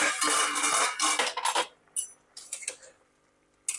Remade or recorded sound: recorded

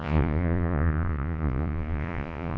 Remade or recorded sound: remade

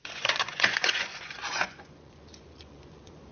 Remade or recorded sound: remade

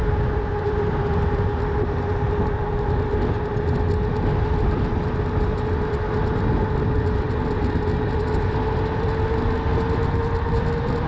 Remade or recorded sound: recorded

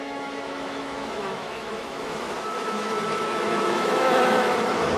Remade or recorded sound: remade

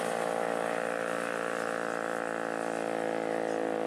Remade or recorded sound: recorded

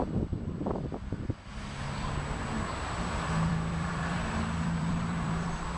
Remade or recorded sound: remade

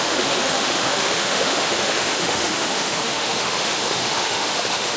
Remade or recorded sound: remade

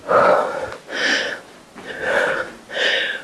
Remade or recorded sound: recorded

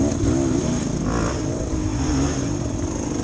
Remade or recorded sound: recorded